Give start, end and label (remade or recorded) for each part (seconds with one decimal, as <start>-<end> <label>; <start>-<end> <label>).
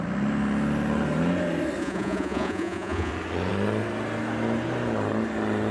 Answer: 0.0-1.8 recorded; 1.8-3.1 remade; 3.1-5.7 recorded